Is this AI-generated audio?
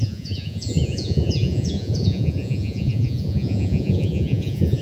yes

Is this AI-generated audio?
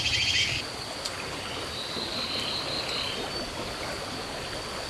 no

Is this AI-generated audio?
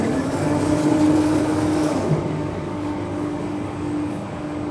yes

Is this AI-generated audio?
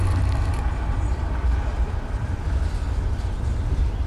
no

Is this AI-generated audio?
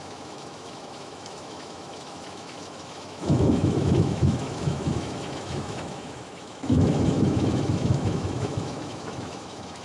yes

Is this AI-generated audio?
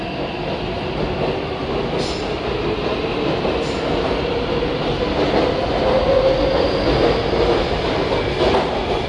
no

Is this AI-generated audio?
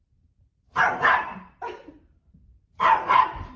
no